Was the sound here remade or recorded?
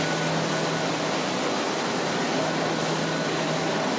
recorded